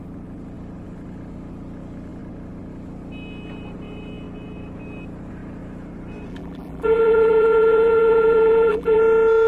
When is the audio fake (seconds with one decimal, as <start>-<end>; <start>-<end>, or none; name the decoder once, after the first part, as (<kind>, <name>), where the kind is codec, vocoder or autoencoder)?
6.3-9.0 (vocoder, BigVGAN v2)